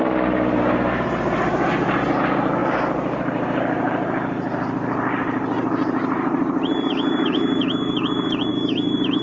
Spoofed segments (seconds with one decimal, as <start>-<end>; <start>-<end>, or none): 0.0-9.2